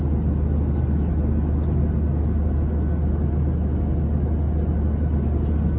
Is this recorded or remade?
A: recorded